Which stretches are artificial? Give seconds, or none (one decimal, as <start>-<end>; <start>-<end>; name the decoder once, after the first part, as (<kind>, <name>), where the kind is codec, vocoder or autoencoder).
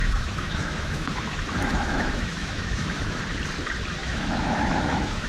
0.0-3.2 (autoencoder, DAC-VAE); 4.0-5.3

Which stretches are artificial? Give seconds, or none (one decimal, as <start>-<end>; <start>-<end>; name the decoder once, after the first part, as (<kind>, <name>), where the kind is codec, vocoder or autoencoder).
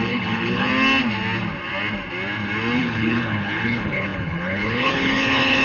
0.0-0.7 (codec, HILCodec); 2.8-5.6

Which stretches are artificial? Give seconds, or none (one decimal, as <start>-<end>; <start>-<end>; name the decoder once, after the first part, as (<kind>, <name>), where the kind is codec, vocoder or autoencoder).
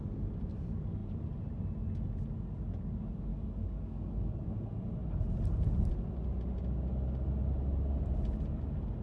3.3-4.5 (codec, DAC)